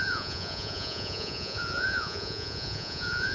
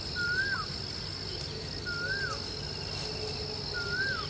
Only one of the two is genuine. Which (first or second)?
second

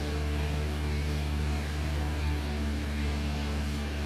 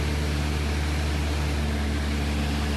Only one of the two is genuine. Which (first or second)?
second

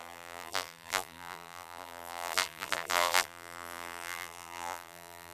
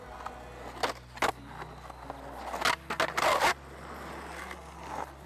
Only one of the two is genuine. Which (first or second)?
second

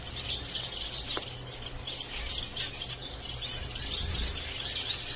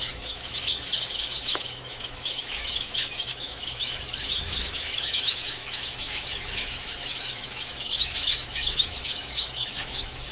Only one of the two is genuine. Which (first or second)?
first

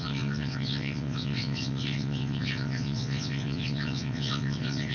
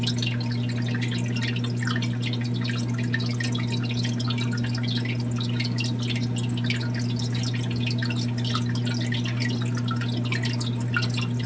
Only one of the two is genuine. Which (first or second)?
second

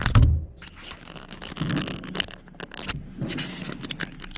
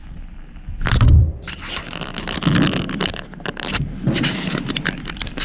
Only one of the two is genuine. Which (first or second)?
first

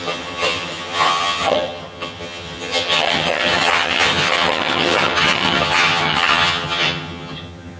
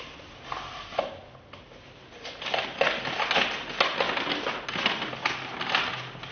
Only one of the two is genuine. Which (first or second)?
second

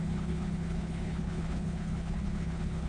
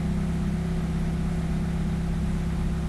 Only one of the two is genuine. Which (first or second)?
second